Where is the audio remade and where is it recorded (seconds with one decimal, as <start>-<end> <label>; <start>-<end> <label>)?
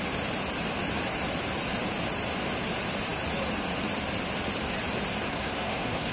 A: 0.0-5.3 recorded; 5.3-6.1 remade